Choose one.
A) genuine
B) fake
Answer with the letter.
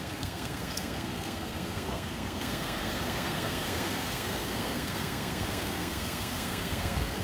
B